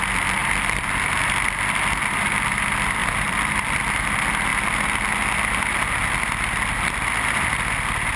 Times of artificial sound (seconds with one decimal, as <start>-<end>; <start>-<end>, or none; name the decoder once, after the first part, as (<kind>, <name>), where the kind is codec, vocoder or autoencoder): 0.4-1.1 (vocoder, BigVGAN v2); 3.0-3.8